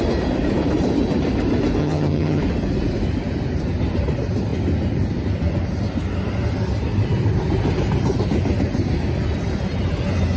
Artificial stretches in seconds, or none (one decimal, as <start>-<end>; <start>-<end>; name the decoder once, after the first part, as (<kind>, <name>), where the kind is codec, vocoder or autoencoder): 1.8-2.4 (vocoder, HiFi-GAN)